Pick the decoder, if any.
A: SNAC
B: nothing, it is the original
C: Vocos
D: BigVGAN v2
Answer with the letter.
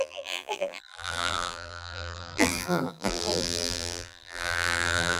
D